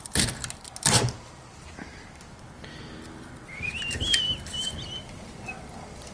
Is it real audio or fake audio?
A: real